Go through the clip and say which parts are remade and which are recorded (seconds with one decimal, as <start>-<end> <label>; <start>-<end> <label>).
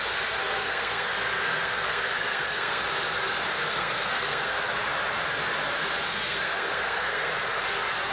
0.0-0.4 recorded; 0.4-2.8 remade; 2.8-3.5 recorded; 3.5-4.7 remade; 4.7-6.1 recorded; 6.1-7.3 remade; 7.3-8.1 recorded